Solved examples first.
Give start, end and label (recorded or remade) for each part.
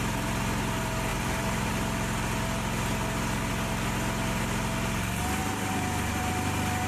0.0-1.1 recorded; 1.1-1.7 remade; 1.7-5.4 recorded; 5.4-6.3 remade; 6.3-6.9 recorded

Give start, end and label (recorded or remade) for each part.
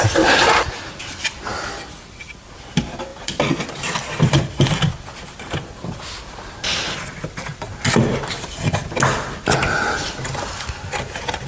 0.0-3.1 recorded; 3.1-5.4 remade; 5.4-11.5 recorded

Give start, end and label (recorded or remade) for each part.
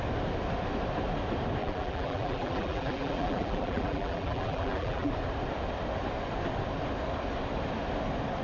0.0-1.6 recorded; 1.6-5.1 remade; 5.1-8.4 recorded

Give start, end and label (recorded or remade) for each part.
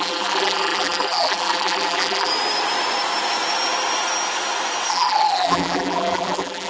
0.0-2.3 remade; 2.3-4.9 recorded; 4.9-6.7 remade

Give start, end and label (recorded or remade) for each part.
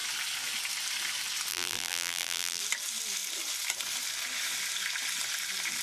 0.0-1.5 recorded; 1.5-2.6 remade; 2.6-5.8 recorded